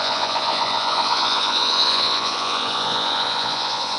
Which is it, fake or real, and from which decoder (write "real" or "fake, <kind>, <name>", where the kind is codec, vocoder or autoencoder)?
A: fake, vocoder, Vocos